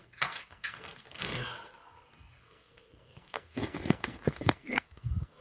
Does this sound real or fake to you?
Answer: fake